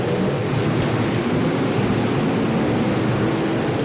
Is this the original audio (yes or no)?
yes